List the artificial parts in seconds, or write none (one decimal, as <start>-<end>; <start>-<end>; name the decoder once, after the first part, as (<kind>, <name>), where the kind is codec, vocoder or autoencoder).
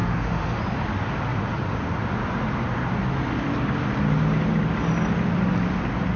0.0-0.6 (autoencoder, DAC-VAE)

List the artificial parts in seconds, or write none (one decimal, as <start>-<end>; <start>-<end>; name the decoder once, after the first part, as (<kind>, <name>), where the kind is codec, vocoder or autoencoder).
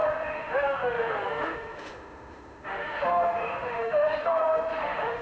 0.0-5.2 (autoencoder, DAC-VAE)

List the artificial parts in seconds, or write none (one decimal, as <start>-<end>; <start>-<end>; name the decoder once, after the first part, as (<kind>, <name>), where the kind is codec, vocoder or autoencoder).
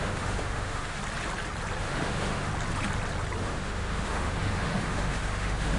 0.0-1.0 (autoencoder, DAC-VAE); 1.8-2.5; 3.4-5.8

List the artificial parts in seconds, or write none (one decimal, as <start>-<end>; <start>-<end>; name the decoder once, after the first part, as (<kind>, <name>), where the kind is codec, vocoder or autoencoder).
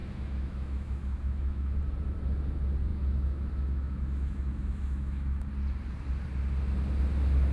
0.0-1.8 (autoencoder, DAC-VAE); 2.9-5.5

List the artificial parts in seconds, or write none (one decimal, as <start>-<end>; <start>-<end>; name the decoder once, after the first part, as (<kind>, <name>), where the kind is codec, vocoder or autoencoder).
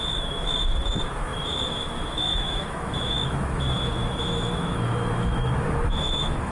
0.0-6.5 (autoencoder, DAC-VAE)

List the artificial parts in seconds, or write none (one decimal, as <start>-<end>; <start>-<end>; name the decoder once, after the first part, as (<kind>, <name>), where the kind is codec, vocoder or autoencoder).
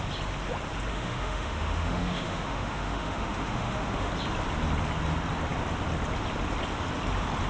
0.9-4.1 (autoencoder, DAC-VAE)